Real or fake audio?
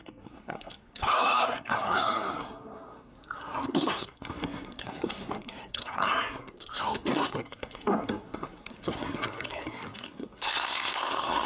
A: fake